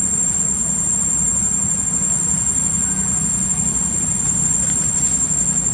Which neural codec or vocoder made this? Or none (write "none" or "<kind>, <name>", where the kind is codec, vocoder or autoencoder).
none